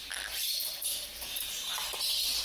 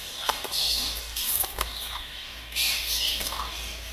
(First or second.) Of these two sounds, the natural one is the first